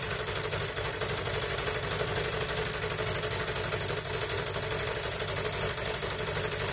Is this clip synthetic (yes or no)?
no